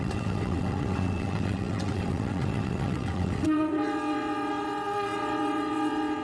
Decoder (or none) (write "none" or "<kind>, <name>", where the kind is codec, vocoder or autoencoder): vocoder, WaveNeXt